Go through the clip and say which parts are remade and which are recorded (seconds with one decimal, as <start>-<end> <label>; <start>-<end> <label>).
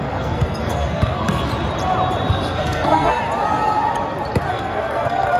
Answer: 0.0-1.5 remade; 1.5-2.3 recorded; 2.3-3.2 remade; 3.2-4.5 recorded; 4.5-5.4 remade